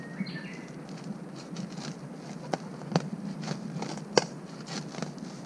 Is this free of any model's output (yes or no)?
yes